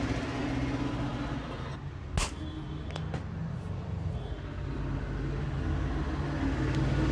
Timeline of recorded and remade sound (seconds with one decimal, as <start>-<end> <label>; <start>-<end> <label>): 0.0-7.1 recorded